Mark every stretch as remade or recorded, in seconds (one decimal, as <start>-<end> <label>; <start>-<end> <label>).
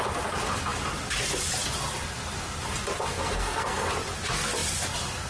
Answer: 0.0-3.1 recorded; 3.1-3.9 remade; 3.9-5.3 recorded